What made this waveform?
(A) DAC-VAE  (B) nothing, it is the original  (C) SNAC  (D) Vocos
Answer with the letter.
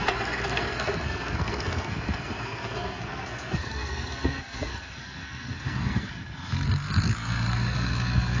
C